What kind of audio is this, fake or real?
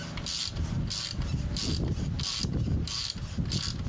real